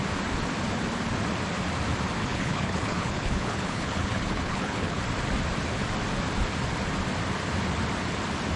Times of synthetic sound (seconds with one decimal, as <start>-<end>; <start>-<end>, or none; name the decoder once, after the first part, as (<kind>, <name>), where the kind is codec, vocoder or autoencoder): 2.2-5.0 (codec, HILCodec)